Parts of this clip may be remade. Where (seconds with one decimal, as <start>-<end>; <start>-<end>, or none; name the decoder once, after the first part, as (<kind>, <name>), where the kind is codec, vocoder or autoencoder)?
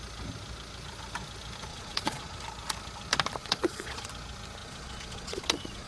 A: 1.7-2.4 (vocoder, Vocos); 3.4-4.1; 4.6-5.9